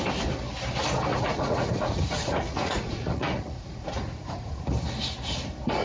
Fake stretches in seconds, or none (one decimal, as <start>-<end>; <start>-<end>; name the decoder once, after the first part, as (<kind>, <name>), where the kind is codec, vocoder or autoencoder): 1.1-4.6 (vocoder, Vocos)